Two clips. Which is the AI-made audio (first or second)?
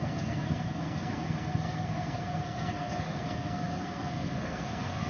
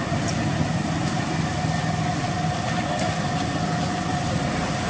first